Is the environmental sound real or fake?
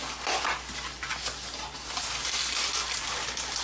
real